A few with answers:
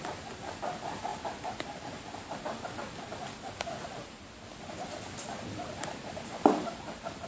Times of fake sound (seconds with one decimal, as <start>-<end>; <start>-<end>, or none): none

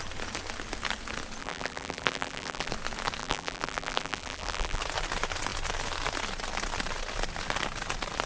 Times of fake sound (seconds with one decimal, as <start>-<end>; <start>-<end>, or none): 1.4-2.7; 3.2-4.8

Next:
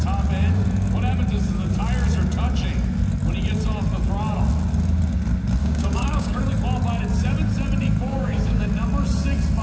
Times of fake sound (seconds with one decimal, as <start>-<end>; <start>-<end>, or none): 5.6-6.4; 8.1-8.6

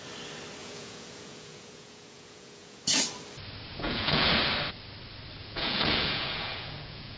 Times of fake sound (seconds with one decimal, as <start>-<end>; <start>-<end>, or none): 0.6-3.0; 3.7-4.3; 5.4-7.2

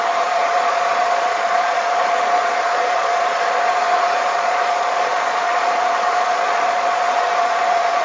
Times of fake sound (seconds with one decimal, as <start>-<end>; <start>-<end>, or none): 0.0-8.0

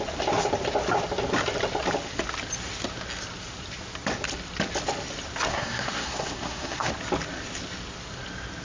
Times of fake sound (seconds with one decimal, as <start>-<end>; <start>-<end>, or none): 5.5-6.9